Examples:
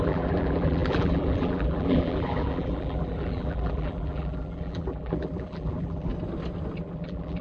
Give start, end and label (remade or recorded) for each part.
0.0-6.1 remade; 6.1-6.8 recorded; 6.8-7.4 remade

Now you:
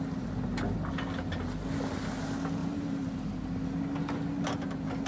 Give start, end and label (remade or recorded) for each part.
0.0-2.6 recorded; 2.6-3.1 remade; 3.1-5.1 recorded

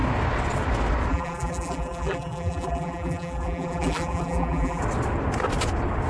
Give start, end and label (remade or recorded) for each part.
0.0-1.1 recorded; 1.1-4.8 remade; 4.8-6.1 recorded